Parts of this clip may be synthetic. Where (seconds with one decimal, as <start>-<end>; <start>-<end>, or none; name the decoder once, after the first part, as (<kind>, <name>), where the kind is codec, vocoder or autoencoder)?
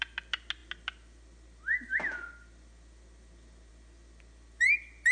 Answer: none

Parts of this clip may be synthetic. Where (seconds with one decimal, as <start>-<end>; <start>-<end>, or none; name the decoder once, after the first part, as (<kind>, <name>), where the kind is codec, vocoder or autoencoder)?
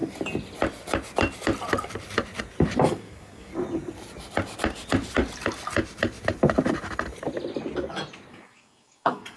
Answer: 2.8-3.5 (codec, DAC); 8.3-9.4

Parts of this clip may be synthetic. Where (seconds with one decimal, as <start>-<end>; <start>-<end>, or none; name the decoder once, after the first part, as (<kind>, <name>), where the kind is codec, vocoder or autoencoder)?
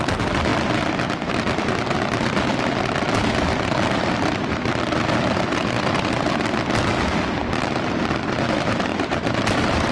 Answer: 8.9-9.9 (vocoder, BigVGAN v2)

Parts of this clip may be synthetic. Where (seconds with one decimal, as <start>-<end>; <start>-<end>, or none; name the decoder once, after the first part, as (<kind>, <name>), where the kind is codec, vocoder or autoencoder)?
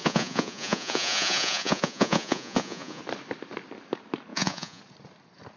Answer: 0.0-3.0 (vocoder, Vocos); 4.3-4.8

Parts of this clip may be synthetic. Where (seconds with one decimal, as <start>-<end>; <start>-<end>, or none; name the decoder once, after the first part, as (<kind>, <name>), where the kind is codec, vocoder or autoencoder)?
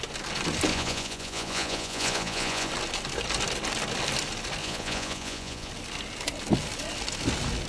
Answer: 0.7-2.7 (vocoder, Vocos); 4.6-5.7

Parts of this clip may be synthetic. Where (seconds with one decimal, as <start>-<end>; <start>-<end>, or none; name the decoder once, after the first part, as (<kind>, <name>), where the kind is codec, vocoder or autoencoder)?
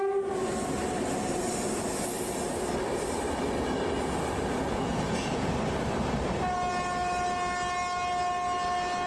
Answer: 4.6-5.5 (vocoder, Vocos)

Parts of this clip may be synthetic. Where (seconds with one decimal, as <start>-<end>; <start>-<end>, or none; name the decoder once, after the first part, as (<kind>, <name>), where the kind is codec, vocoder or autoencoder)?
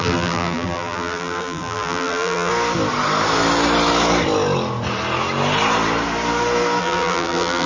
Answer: 0.0-2.5 (vocoder, BigVGAN v2); 6.8-7.7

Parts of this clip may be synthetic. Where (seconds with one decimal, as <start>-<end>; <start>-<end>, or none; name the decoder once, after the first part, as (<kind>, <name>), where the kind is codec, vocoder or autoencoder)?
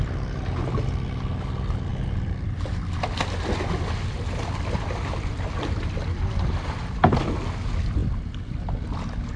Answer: none